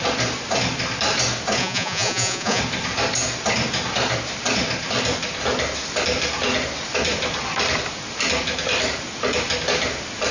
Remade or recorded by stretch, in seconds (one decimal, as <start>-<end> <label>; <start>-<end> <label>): 0.0-1.6 recorded; 1.6-2.6 remade; 2.6-10.3 recorded